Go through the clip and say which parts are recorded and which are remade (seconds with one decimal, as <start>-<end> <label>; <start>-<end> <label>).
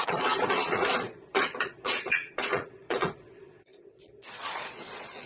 0.0-5.3 remade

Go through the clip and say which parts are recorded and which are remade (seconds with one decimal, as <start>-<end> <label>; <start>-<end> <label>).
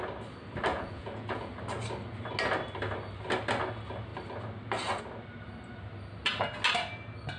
0.0-0.7 recorded; 0.7-1.5 remade; 1.5-7.4 recorded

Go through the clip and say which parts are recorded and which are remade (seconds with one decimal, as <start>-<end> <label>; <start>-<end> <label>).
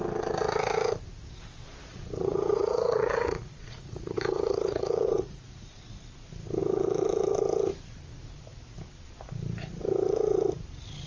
0.0-1.9 recorded; 1.9-5.8 remade; 5.8-11.1 recorded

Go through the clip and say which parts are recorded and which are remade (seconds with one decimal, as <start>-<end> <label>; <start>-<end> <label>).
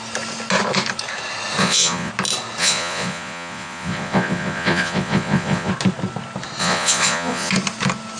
0.0-1.6 recorded; 1.6-2.1 remade; 2.1-2.6 recorded; 2.6-5.7 remade; 5.7-6.6 recorded; 6.6-7.5 remade; 7.5-8.2 recorded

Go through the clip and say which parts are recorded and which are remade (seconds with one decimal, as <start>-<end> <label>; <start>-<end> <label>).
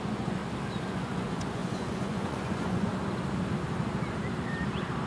0.0-0.4 remade; 0.4-0.9 recorded; 0.9-2.9 remade; 2.9-5.1 recorded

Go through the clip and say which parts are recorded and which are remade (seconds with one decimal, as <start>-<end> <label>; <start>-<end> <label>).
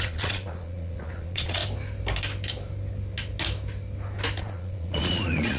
0.0-1.6 remade; 1.6-4.4 recorded; 4.4-5.6 remade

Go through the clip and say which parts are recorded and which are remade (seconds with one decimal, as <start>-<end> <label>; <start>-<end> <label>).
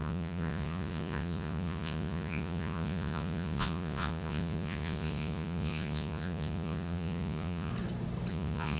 0.0-7.7 remade; 7.7-8.3 recorded; 8.3-8.8 remade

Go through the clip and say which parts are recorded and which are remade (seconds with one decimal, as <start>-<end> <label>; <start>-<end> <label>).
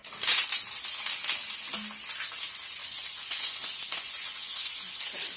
0.0-2.8 recorded; 2.8-5.0 remade; 5.0-5.4 recorded